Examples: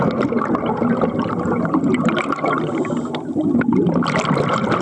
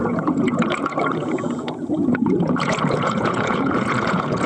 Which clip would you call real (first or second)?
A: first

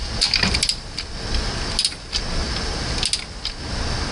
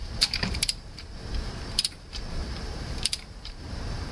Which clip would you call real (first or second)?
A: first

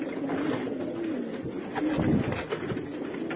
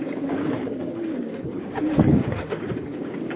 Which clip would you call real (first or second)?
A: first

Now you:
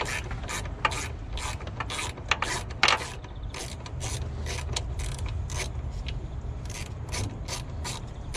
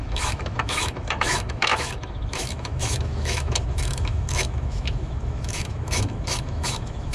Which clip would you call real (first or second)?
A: first